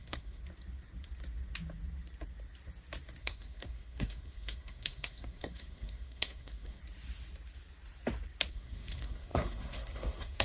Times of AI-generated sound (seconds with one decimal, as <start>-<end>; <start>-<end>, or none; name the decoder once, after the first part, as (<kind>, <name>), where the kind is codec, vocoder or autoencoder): 0.0-0.4 (codec, SNAC); 3.2-6.8; 8.5-10.4